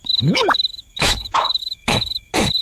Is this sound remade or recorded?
remade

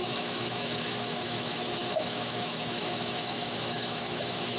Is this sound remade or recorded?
remade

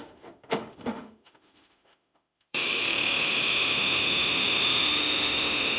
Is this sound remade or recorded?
remade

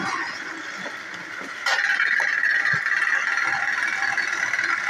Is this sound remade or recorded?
recorded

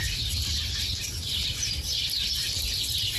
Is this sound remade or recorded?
recorded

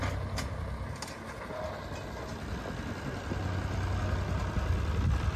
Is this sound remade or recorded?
recorded